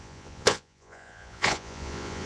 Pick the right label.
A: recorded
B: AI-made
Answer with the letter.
B